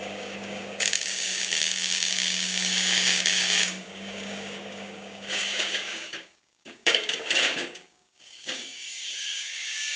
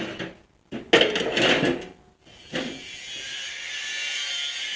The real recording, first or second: second